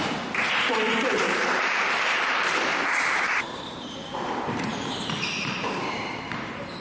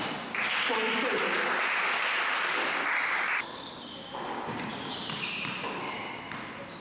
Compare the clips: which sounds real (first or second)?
second